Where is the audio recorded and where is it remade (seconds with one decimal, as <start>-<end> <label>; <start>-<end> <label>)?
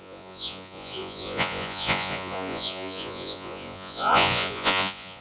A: 0.0-5.2 remade